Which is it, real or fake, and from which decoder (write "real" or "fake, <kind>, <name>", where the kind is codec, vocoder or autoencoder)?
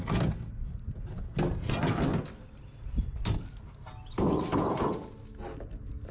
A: real